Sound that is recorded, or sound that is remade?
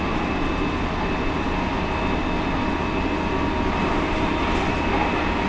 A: recorded